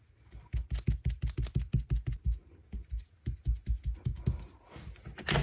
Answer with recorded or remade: recorded